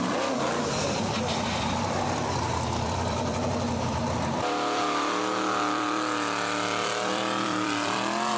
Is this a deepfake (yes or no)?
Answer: yes